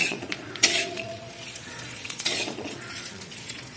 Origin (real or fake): fake